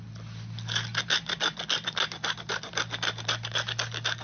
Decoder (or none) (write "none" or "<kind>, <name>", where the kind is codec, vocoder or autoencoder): none